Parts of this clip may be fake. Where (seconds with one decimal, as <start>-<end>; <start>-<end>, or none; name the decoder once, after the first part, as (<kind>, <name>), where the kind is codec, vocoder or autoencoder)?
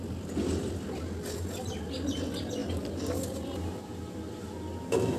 none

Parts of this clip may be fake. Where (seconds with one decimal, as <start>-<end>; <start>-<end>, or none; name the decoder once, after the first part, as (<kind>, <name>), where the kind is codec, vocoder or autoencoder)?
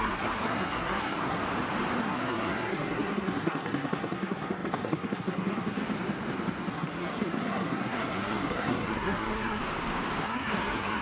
0.0-1.4 (codec, SNAC); 2.0-5.8; 6.7-9.6; 10.2-11.0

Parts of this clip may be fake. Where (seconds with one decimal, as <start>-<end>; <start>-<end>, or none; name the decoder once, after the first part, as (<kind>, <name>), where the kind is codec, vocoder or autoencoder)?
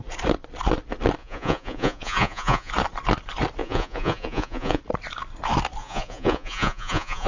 1.2-2.7 (vocoder, Vocos); 3.6-4.8; 5.8-7.3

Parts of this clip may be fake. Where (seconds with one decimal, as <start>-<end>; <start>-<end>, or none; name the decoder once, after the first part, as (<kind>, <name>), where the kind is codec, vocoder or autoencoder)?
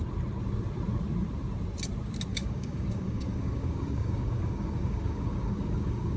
2.3-6.2 (codec, DAC)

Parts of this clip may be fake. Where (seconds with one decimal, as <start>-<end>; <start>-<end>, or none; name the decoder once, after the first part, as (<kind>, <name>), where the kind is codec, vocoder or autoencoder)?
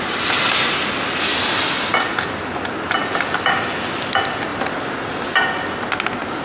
none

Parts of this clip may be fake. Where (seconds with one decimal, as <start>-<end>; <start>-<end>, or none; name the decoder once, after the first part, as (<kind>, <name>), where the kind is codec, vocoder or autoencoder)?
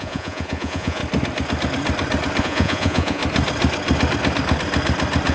0.0-1.0 (vocoder, Vocos); 2.4-3.2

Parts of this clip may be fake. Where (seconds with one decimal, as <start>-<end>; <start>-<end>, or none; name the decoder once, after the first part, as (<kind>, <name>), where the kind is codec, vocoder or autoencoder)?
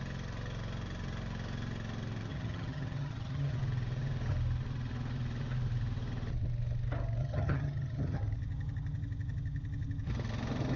2.3-3.6 (vocoder, HiFi-GAN); 7.2-8.2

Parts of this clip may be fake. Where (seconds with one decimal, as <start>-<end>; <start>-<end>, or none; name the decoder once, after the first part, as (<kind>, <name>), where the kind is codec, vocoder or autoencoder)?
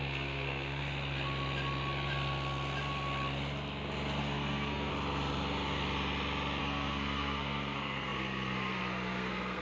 0.0-0.8 (codec, SNAC); 4.2-4.9; 6.6-9.6